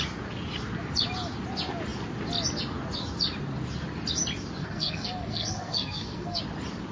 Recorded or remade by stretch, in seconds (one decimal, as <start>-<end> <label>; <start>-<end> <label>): 0.0-4.6 recorded; 4.6-6.4 remade; 6.4-6.9 recorded